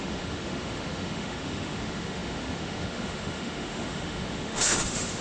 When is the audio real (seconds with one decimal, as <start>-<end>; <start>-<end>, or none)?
none

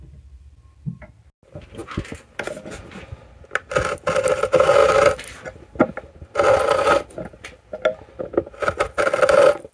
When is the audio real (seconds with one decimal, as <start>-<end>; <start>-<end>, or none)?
0.0-9.7

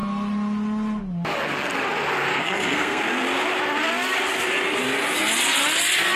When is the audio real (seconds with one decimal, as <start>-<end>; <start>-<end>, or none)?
0.0-2.3; 3.0-6.2